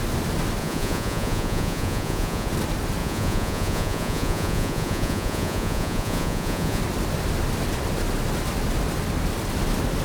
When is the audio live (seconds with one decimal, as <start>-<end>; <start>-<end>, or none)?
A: 0.0-0.6; 2.5-3.0; 6.8-10.0